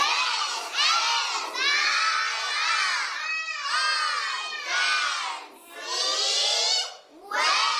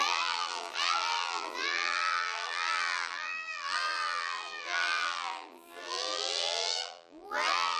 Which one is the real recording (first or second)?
first